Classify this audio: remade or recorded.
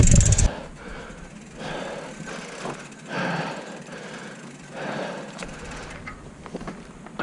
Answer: recorded